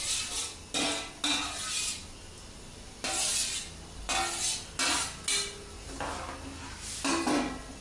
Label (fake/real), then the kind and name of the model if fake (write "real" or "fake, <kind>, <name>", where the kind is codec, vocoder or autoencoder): real